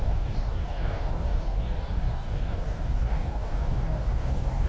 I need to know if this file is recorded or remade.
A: remade